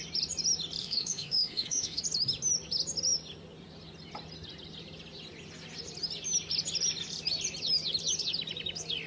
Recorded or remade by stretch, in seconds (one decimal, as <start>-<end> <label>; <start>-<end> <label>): 0.0-0.8 recorded; 0.8-2.0 remade; 2.0-9.1 recorded